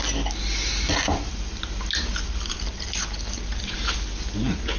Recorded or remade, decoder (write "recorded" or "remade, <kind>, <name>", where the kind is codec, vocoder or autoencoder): recorded